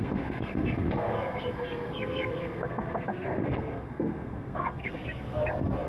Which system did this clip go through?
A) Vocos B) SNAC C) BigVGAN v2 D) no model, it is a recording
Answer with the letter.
B